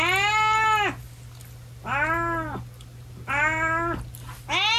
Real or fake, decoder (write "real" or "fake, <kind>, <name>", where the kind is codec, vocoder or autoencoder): real